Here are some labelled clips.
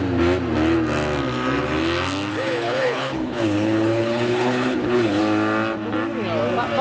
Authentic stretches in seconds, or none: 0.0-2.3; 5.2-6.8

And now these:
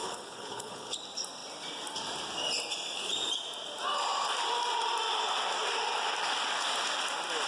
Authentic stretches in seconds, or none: 1.0-7.5